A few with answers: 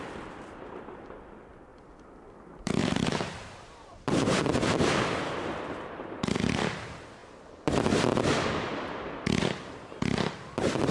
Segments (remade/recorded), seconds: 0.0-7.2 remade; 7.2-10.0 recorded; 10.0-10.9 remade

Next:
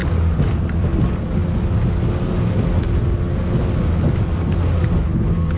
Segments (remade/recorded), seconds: 0.0-1.4 remade; 1.4-4.8 recorded; 4.8-5.6 remade

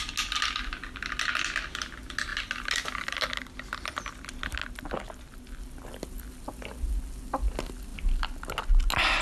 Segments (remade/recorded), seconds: 0.0-9.2 recorded